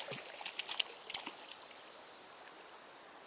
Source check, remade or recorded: recorded